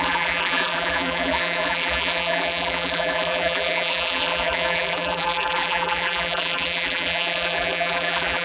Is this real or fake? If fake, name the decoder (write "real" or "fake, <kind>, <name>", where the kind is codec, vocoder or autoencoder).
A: fake, vocoder, BigVGAN v2